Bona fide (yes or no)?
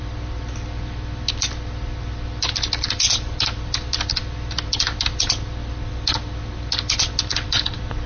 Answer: yes